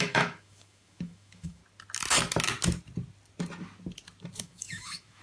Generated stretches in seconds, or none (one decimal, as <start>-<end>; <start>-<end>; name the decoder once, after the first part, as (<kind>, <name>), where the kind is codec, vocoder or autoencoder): 0.0-1.6 (autoencoder, DAC-VAE); 4.4-5.2